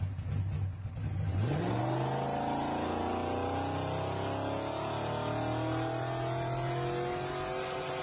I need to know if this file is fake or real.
real